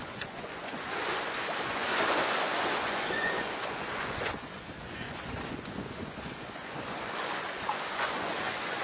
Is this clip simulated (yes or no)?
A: yes